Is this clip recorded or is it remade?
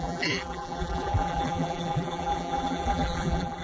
remade